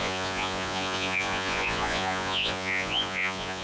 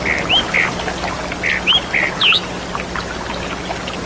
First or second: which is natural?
second